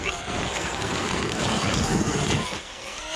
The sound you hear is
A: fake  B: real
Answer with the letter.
A